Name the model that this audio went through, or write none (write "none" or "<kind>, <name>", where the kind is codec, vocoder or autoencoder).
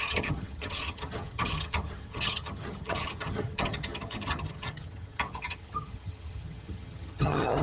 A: vocoder, HiFi-GAN